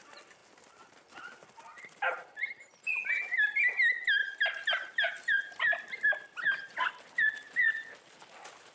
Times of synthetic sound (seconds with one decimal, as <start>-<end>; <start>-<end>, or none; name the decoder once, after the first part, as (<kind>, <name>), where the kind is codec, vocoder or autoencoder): none